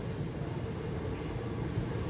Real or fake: real